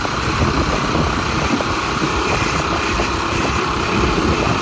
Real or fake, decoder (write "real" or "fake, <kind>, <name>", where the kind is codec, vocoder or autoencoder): real